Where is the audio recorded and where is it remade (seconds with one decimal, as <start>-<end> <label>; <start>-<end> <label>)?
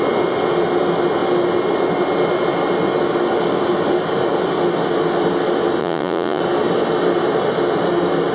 0.0-5.8 recorded; 5.8-6.4 remade; 6.4-8.3 recorded